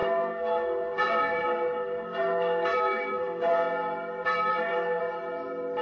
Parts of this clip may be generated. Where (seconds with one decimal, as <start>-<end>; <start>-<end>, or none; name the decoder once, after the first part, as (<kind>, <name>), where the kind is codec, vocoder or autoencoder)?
0.0-3.5 (codec, SNAC); 4.5-5.0